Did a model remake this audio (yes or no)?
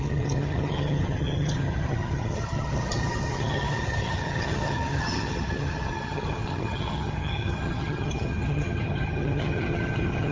yes